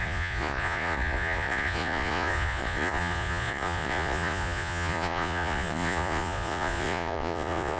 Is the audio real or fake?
fake